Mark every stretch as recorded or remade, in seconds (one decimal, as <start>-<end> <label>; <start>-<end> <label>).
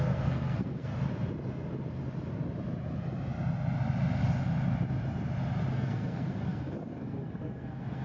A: 0.0-0.9 remade; 0.9-5.7 recorded; 5.7-8.0 remade